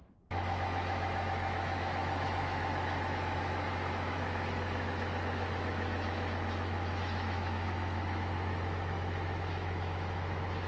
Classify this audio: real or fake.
fake